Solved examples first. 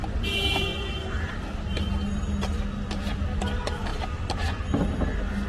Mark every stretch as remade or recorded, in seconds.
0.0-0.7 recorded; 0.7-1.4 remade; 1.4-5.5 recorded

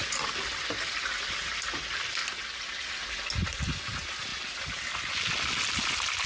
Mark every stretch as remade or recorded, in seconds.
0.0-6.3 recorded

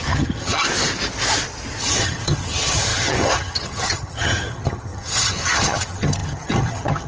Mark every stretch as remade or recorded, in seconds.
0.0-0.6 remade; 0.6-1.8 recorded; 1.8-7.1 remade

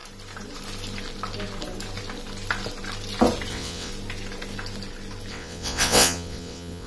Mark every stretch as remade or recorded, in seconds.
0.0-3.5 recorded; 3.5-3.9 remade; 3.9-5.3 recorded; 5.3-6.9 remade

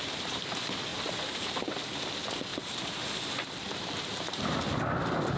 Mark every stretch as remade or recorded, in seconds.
0.0-0.9 recorded; 0.9-1.5 remade; 1.5-2.5 recorded; 2.5-4.6 remade; 4.6-5.4 recorded

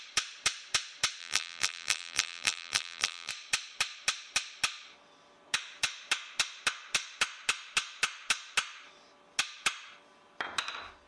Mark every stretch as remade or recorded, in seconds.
0.0-1.2 recorded; 1.2-3.3 remade; 3.3-11.1 recorded